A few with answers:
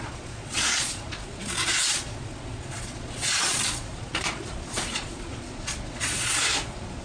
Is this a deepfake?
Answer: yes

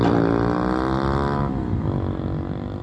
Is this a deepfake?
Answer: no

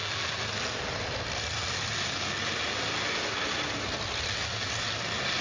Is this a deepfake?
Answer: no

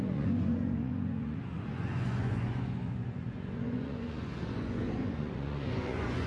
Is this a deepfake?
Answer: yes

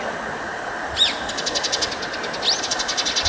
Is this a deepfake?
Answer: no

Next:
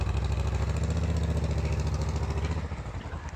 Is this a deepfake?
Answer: no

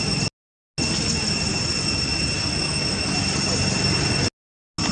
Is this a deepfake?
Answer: no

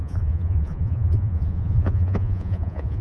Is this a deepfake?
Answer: yes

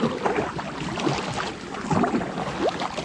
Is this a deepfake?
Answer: no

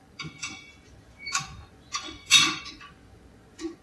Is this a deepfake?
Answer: yes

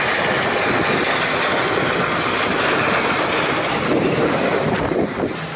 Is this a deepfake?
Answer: no